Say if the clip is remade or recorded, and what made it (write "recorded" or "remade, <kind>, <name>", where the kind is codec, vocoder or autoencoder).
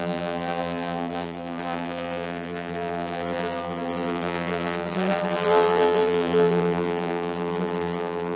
remade, vocoder, BigVGAN v2